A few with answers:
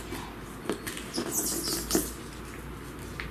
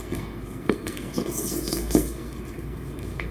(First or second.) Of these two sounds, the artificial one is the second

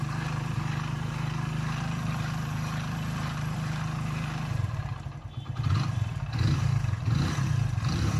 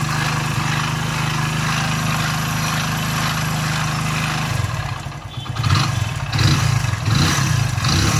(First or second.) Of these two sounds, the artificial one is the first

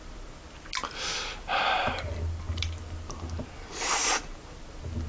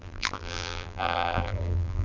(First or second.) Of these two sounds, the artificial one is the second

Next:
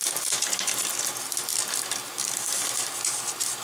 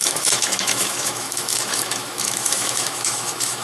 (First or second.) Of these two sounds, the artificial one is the second